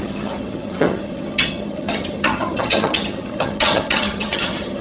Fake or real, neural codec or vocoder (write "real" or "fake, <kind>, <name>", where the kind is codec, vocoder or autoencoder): fake, vocoder, HiFi-GAN